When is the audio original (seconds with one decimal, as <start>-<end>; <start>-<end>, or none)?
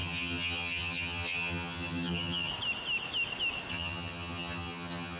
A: 2.5-3.7